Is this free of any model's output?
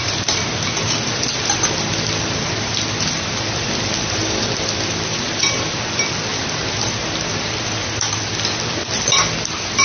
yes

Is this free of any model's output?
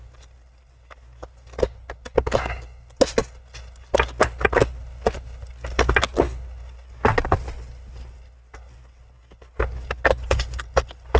yes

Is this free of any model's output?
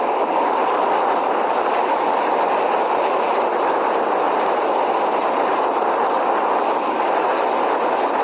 yes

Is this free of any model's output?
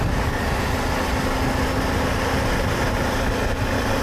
yes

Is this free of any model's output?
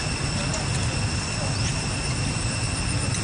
yes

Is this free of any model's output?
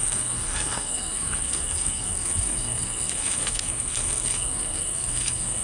no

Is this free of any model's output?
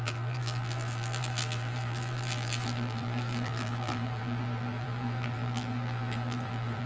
no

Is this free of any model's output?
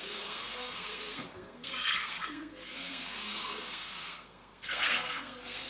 no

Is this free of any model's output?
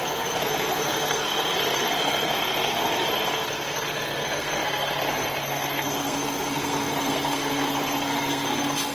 no